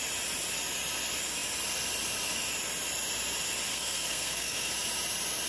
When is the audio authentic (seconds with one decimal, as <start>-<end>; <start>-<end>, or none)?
0.0-3.7; 4.7-5.5